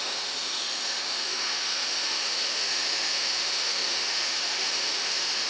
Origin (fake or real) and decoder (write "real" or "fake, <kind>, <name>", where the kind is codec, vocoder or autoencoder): fake, autoencoder, DAC-VAE